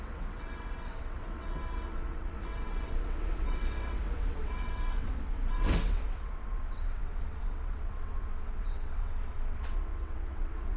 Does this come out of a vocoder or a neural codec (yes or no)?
yes